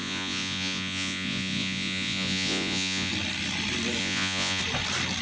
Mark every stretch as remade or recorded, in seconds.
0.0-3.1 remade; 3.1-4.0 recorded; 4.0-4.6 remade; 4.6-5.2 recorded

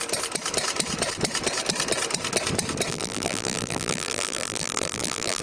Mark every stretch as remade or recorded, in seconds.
0.0-2.9 recorded; 2.9-5.4 remade

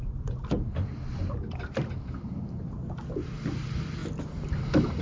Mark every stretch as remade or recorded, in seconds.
0.0-5.0 recorded

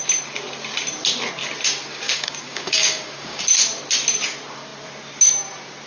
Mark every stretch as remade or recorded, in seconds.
0.0-1.9 recorded; 1.9-3.4 remade; 3.4-5.9 recorded

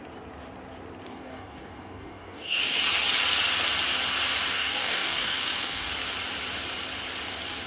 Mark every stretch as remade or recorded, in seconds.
0.0-1.1 recorded; 1.1-2.8 remade; 2.8-4.5 recorded; 4.5-5.9 remade; 5.9-7.7 recorded

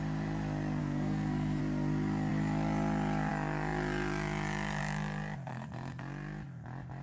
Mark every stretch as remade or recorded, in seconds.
0.0-0.8 recorded; 0.8-1.6 remade; 1.6-5.5 recorded; 5.5-6.0 remade; 6.0-7.0 recorded

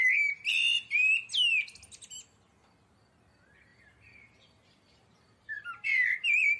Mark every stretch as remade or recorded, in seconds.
0.0-3.7 recorded; 3.7-6.6 remade

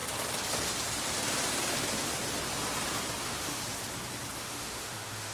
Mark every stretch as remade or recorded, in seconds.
0.0-3.2 recorded; 3.2-3.6 remade; 3.6-4.4 recorded; 4.4-5.3 remade